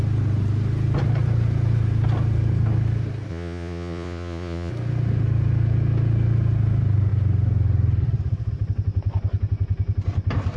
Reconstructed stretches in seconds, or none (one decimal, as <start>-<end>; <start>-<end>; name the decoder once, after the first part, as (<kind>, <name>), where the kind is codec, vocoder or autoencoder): 3.3-4.7 (vocoder, Vocos)